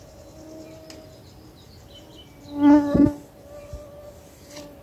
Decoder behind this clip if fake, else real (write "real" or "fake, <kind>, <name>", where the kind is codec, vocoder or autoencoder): real